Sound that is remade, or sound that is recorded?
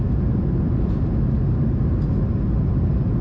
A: recorded